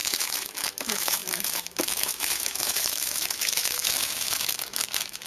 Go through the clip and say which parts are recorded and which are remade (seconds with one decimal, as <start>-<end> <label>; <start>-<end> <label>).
0.0-5.3 remade